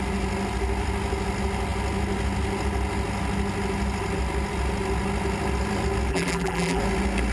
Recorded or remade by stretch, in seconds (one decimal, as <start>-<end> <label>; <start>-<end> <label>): 0.0-6.1 recorded; 6.1-6.8 remade; 6.8-7.3 recorded